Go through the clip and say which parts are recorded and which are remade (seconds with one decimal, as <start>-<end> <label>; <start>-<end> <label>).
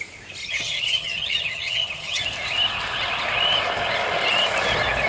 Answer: 0.0-0.4 recorded; 0.4-2.2 remade; 2.2-5.1 recorded